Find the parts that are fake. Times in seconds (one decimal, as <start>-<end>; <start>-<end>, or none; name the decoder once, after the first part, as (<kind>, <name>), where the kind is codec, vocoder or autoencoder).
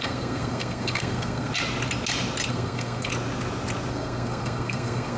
0.0-1.5 (codec, SNAC); 2.5-3.1; 3.9-5.2